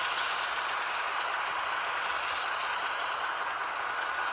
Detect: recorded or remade remade